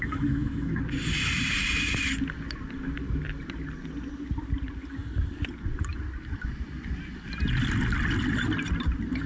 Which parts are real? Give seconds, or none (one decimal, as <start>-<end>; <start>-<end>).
0.8-9.3